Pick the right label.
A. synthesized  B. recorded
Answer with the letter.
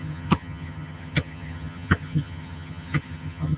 A